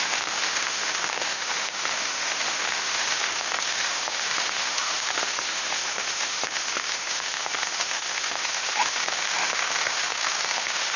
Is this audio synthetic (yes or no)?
yes